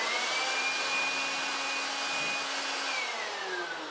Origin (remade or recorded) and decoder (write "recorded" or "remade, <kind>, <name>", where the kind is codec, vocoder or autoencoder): recorded